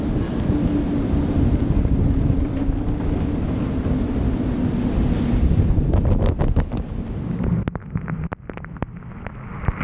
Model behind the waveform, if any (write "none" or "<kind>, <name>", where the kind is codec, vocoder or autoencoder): none